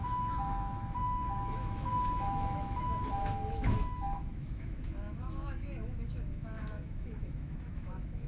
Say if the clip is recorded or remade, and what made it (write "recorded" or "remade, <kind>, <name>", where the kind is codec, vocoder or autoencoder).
remade, autoencoder, DAC-VAE